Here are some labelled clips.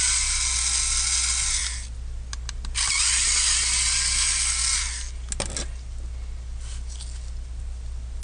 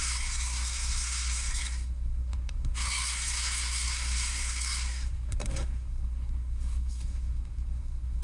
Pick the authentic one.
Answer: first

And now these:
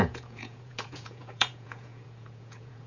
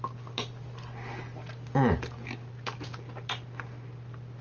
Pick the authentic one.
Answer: second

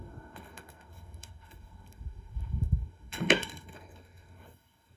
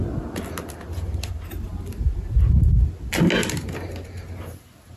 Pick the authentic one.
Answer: second